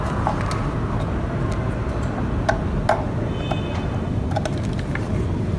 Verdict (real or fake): real